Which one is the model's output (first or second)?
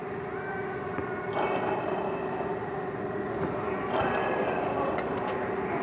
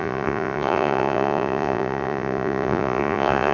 second